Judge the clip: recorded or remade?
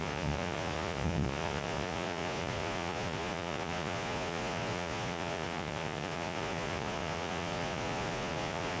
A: remade